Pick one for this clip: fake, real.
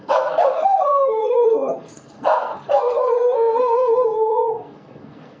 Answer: fake